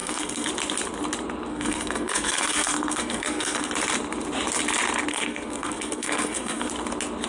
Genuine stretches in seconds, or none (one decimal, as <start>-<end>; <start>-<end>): 0.5-1.5; 3.7-5.1; 6.7-7.3